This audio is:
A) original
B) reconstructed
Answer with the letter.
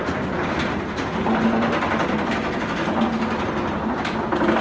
A